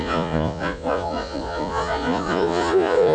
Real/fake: fake